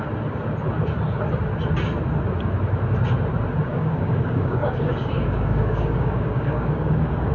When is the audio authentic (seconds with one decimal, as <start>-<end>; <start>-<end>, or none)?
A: 0.0-3.7